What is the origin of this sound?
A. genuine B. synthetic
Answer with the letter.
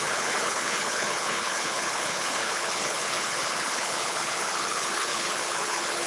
B